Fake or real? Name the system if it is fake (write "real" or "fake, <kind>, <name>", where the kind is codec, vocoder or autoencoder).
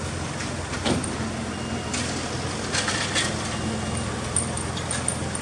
real